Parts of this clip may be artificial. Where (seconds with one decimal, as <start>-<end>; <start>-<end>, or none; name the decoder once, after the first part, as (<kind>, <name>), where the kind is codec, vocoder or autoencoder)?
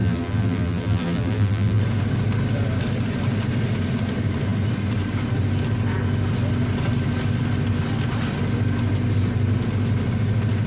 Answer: 0.0-1.8 (vocoder, BigVGAN v2)